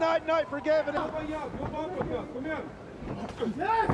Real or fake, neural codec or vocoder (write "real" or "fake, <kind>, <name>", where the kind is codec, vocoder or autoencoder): real